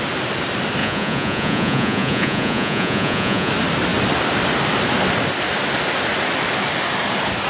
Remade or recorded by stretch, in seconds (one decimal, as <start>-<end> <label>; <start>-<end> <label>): 0.0-0.8 recorded; 0.8-3.5 remade; 3.5-7.5 recorded